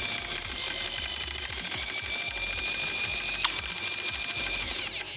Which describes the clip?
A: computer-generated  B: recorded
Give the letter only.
B